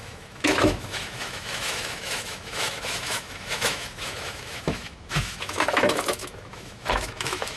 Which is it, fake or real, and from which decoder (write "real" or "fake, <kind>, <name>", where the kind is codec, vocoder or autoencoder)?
fake, autoencoder, DAC-VAE